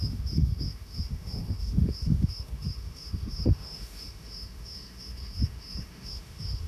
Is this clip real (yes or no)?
no